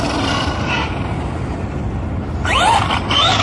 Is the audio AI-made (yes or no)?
no